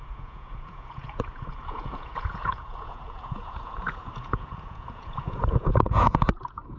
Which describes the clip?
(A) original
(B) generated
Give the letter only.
B